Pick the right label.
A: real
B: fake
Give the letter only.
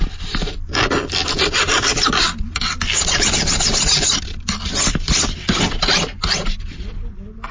A